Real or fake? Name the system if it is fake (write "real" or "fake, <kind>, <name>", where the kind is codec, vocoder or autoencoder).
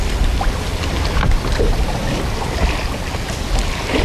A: real